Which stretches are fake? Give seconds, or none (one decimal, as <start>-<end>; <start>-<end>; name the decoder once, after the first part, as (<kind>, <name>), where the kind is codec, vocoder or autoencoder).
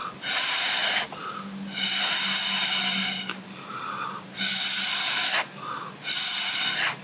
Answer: none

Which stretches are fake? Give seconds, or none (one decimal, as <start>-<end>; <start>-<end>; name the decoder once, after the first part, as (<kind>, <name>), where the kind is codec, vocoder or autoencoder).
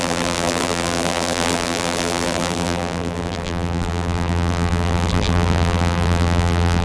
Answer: 0.0-6.8 (vocoder, BigVGAN v2)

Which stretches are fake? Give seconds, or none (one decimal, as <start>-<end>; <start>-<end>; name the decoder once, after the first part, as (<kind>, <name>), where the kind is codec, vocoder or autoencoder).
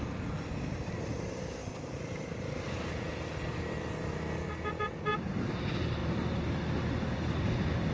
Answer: none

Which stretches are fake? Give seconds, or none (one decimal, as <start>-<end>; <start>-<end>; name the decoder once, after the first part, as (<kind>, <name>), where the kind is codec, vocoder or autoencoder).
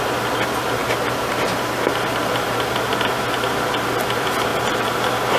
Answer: 0.8-1.5 (vocoder, BigVGAN v2); 2.9-3.5; 4.5-5.4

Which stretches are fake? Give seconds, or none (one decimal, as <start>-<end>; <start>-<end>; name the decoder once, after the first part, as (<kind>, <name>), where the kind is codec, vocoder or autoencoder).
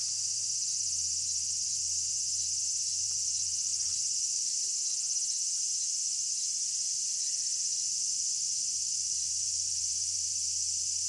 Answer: 3.7-4.6 (vocoder, BigVGAN v2); 7.5-10.3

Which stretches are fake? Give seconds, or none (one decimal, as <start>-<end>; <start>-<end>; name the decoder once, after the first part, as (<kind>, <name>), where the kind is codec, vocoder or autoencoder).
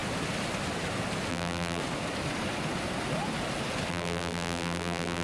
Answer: 1.3-1.8 (vocoder, BigVGAN v2); 3.9-5.2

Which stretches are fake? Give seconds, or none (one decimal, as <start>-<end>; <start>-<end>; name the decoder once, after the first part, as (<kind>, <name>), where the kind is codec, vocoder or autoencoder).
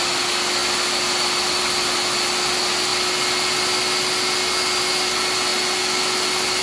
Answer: none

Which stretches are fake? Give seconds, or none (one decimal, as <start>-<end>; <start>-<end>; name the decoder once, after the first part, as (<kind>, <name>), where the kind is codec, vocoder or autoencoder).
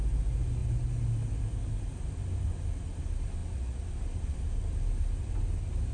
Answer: none